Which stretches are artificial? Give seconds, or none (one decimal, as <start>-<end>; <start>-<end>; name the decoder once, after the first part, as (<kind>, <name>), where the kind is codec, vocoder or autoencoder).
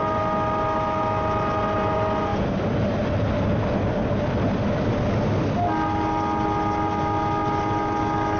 none